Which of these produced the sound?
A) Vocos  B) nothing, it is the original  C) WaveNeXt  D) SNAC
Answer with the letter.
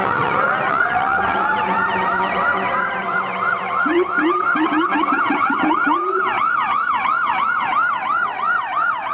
C